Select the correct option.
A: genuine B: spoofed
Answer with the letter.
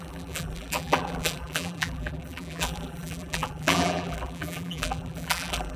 B